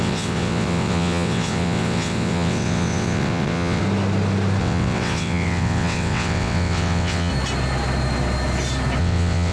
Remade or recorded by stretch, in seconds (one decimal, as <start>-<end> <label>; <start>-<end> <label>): 0.0-3.8 remade; 3.8-4.6 recorded; 4.6-7.3 remade; 7.3-9.0 recorded; 9.0-9.5 remade